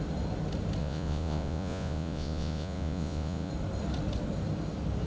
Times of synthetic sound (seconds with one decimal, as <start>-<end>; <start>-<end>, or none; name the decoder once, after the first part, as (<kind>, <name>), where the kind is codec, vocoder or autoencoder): 0.8-3.5 (vocoder, Vocos)